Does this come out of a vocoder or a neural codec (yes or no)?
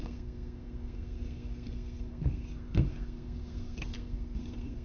yes